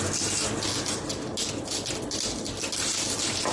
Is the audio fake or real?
real